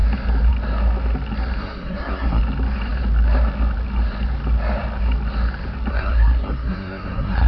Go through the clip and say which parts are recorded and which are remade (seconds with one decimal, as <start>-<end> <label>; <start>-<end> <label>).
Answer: 0.0-1.6 recorded; 1.6-2.4 remade; 2.4-5.9 recorded; 5.9-7.5 remade